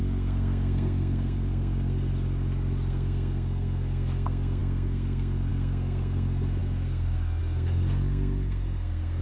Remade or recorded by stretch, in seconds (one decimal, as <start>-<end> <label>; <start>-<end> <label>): 0.0-2.1 remade; 2.1-2.9 recorded; 2.9-9.2 remade